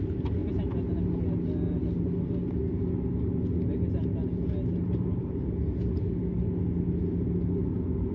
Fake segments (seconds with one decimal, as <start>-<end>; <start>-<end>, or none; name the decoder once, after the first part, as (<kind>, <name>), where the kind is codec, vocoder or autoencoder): none